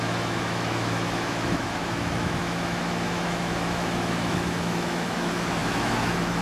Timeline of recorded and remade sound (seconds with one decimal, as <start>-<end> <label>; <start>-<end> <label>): 0.0-6.4 remade